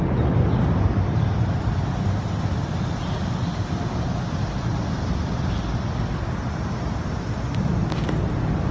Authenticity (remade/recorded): recorded